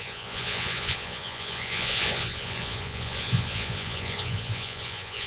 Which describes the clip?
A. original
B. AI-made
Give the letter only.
B